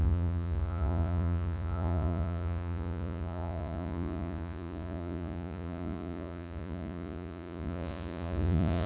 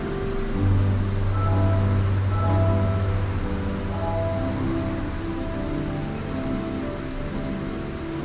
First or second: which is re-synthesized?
first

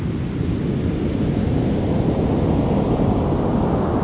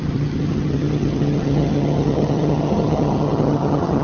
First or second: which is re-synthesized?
second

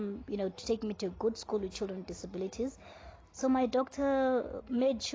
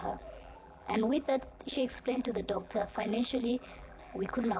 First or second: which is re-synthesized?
second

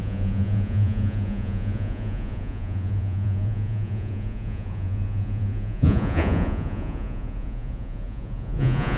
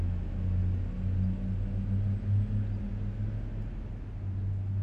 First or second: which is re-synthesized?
first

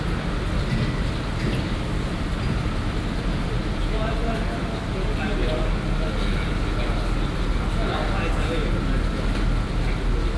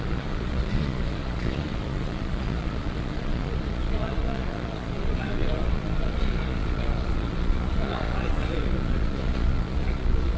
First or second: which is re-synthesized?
second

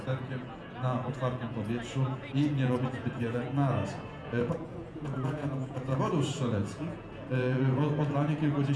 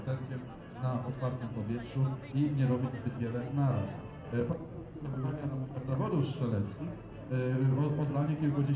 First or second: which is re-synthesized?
first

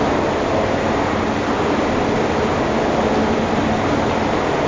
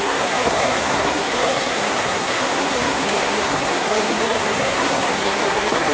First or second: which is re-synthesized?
second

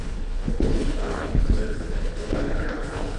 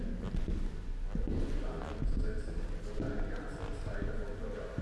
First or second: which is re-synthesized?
first